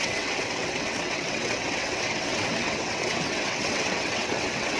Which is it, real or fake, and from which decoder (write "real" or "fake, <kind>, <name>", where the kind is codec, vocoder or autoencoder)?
fake, vocoder, WaveNeXt